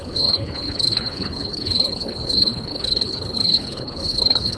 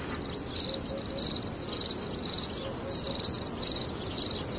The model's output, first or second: first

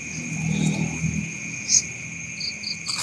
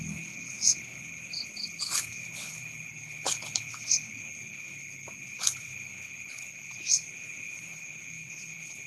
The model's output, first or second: second